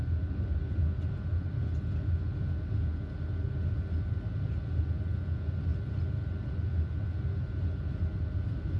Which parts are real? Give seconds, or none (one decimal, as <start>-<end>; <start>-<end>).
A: 0.0-8.8